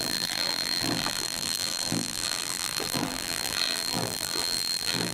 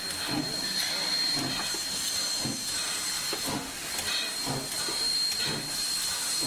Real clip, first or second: second